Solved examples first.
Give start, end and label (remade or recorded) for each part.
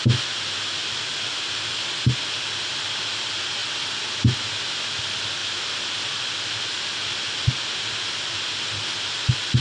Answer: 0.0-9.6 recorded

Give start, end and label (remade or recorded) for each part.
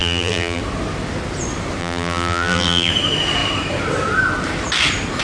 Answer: 0.0-0.6 remade; 0.6-1.8 recorded; 1.8-2.9 remade; 2.9-5.2 recorded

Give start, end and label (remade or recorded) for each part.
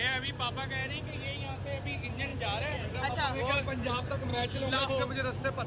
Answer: 0.0-4.3 recorded; 4.3-4.9 remade; 4.9-5.7 recorded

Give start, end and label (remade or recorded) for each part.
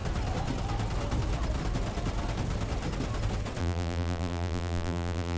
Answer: 0.0-3.6 recorded; 3.6-5.4 remade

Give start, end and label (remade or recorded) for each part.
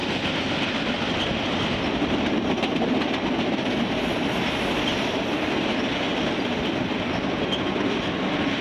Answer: 0.0-1.9 remade; 1.9-4.9 recorded; 4.9-5.4 remade; 5.4-8.6 recorded